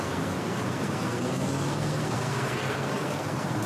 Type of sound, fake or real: fake